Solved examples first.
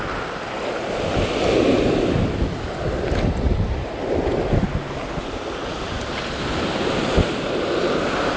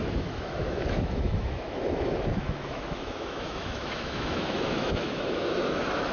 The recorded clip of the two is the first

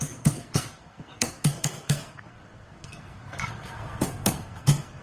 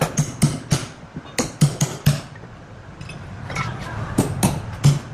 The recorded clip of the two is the second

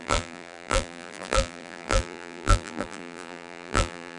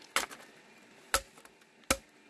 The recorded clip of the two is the second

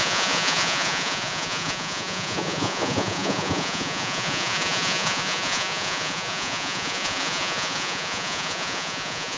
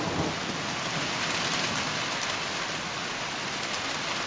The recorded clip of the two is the second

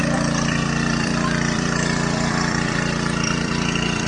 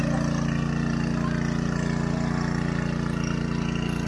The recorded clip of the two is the second